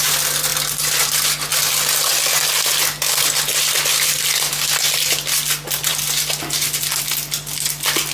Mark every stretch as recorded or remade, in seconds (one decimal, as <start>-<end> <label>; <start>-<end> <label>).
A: 0.0-8.1 recorded